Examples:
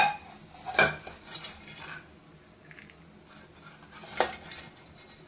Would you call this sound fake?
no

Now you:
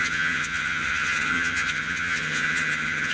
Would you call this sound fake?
yes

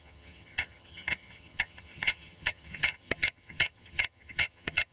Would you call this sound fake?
yes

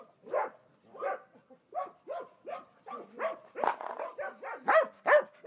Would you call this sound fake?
no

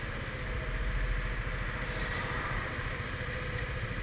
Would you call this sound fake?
no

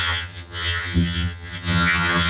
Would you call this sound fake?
yes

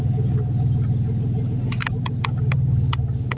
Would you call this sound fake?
no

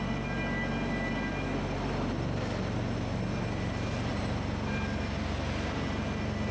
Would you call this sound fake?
no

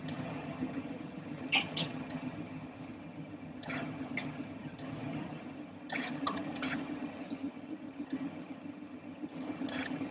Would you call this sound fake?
yes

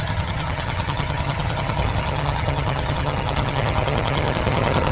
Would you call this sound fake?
yes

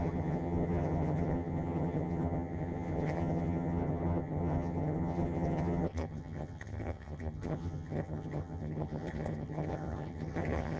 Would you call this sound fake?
yes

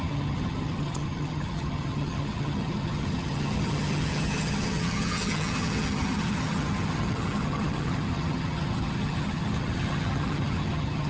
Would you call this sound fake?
yes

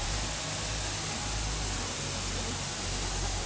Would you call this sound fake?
no